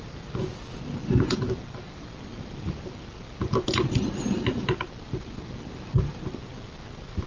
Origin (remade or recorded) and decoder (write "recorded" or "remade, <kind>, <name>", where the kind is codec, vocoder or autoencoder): recorded